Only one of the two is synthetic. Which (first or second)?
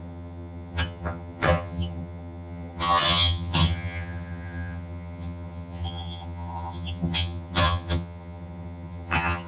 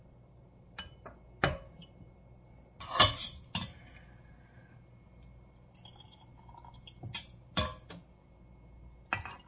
first